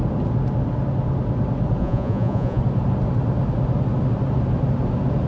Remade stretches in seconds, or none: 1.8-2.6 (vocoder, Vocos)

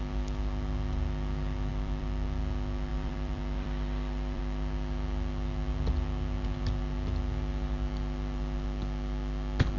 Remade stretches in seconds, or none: 1.7-2.4 (vocoder, BigVGAN v2); 2.9-4.4

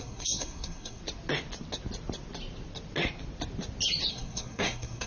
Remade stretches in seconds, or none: 0.0-1.0 (codec, SNAC); 4.1-5.1

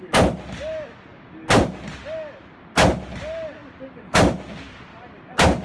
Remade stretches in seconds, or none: none

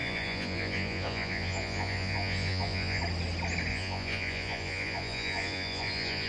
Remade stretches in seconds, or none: 0.0-3.0 (vocoder, Vocos); 3.7-6.3